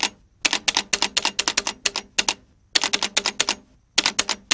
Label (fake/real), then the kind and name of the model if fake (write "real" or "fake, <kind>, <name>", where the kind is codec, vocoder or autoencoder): real